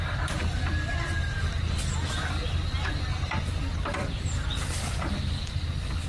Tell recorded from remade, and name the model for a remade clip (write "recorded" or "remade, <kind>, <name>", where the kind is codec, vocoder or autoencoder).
recorded